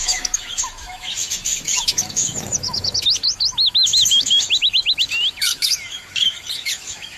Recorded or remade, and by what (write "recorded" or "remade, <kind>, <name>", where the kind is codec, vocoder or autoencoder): remade, autoencoder, DAC-VAE